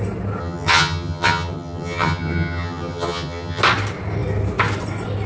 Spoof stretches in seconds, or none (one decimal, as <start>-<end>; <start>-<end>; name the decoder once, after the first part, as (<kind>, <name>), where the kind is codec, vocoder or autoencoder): 0.4-3.6 (vocoder, HiFi-GAN)